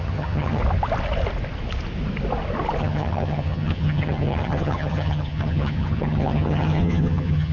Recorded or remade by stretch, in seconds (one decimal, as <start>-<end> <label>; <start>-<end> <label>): 0.0-0.6 remade; 0.6-2.8 recorded; 2.8-7.5 remade